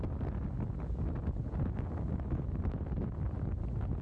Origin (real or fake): real